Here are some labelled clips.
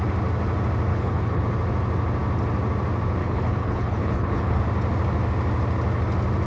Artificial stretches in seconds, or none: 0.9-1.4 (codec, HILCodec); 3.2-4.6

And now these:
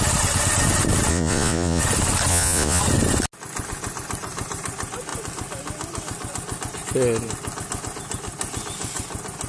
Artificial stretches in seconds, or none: 1.1-1.8 (vocoder, Vocos); 2.3-2.8

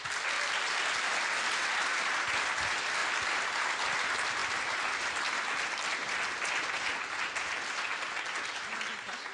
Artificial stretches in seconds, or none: none